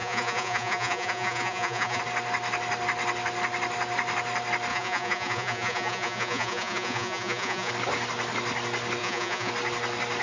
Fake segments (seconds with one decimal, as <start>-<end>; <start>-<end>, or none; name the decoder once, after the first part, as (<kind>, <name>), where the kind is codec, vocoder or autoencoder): 0.0-2.0 (vocoder, Vocos); 4.7-7.7; 9.0-9.5